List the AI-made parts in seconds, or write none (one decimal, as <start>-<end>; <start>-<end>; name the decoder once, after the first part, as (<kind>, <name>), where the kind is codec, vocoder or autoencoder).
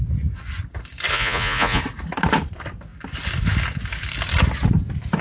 1.1-1.8 (vocoder, Vocos)